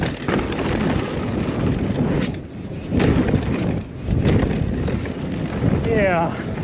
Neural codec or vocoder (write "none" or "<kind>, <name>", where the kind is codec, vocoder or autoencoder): none